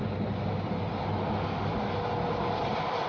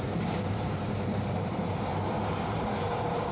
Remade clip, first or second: second